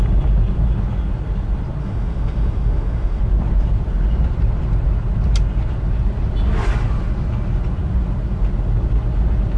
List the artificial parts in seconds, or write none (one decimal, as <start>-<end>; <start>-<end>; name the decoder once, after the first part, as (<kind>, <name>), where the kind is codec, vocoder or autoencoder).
1.8-3.2 (autoencoder, DAC-VAE)